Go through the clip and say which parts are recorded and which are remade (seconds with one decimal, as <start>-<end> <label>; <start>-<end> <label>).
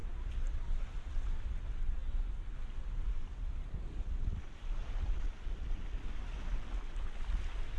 0.0-0.9 remade; 0.9-4.8 recorded; 4.8-6.2 remade; 6.2-7.8 recorded